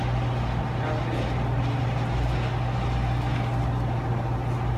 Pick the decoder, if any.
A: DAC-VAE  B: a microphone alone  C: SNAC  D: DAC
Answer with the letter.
B